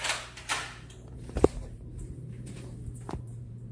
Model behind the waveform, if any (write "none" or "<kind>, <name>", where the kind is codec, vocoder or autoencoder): vocoder, BigVGAN v2